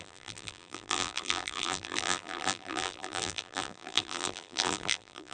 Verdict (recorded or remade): remade